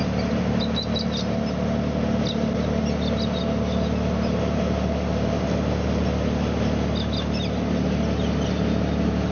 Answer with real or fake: real